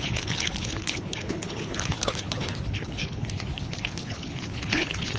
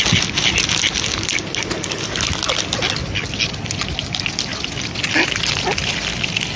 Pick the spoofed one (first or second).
first